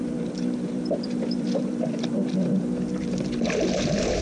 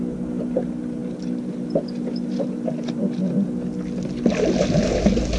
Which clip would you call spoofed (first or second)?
first